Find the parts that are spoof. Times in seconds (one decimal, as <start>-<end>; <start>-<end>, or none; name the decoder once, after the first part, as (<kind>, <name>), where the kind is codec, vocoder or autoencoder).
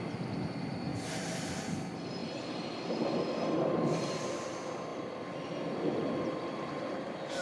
0.9-1.5 (vocoder, BigVGAN v2); 4.9-6.4